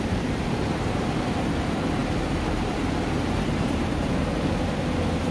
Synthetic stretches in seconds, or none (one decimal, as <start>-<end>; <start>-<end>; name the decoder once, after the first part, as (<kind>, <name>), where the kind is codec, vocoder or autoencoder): 0.0-5.3 (vocoder, BigVGAN v2)